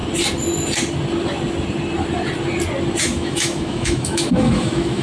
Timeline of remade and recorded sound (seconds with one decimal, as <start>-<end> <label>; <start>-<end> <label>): 0.0-3.0 recorded; 3.0-5.0 remade